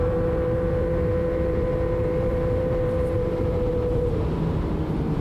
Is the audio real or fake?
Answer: fake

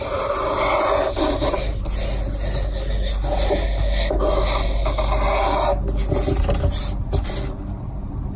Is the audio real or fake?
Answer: real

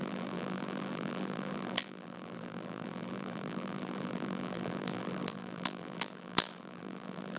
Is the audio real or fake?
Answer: fake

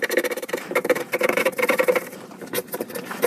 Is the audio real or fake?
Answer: fake